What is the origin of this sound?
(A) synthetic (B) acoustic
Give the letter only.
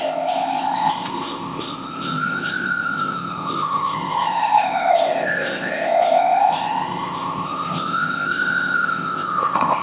A